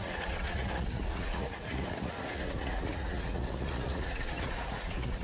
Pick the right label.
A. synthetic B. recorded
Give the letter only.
A